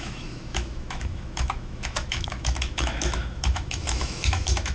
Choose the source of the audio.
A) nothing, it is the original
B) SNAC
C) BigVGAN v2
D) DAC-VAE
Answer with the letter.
D